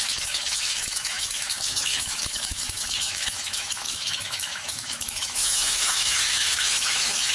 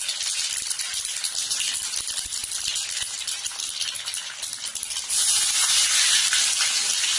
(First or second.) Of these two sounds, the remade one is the first